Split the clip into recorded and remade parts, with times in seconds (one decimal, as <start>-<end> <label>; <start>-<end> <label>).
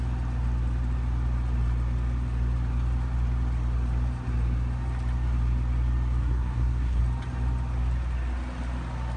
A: 0.0-6.2 recorded; 6.2-7.0 remade; 7.0-9.2 recorded